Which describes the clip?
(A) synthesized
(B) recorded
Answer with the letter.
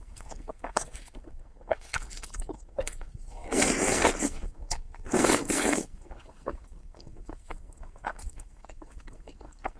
A